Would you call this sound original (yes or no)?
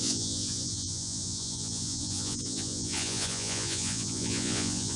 no